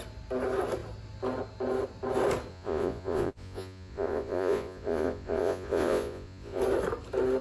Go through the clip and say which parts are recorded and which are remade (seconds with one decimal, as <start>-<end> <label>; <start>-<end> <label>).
0.0-2.5 recorded; 2.5-6.6 remade; 6.6-7.4 recorded